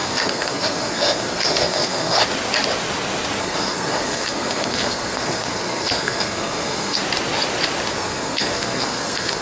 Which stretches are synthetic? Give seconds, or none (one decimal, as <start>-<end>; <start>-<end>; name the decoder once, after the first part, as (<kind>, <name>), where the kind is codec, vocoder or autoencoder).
0.0-2.2 (codec, SNAC); 3.4-7.0; 7.9-9.4